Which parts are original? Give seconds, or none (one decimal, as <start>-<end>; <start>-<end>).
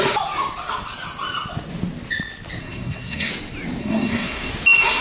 0.0-2.6; 3.3-3.8; 4.5-5.0